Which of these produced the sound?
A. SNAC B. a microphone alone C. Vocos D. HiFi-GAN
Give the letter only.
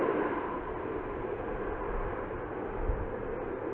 B